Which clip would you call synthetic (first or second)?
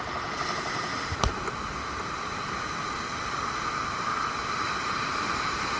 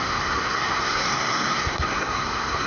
second